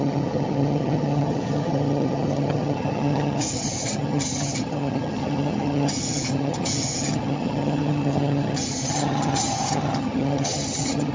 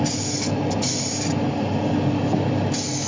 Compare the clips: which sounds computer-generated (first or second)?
first